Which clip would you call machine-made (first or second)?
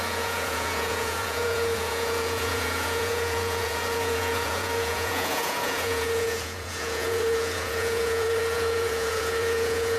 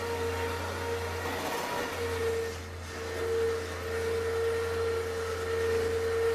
first